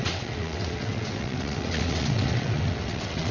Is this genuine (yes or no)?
no